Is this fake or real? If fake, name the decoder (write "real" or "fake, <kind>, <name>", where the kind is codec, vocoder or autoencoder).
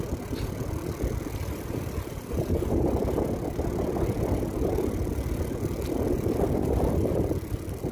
real